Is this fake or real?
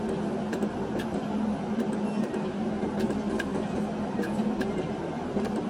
real